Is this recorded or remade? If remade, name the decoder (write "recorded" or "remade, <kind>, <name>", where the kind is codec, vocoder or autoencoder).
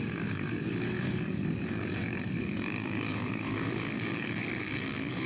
remade, codec, DAC